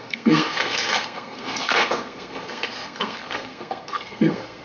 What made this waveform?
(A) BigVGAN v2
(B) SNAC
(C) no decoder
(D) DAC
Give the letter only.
B